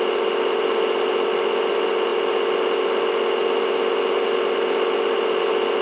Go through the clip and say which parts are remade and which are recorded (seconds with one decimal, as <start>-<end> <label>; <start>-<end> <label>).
0.0-5.8 recorded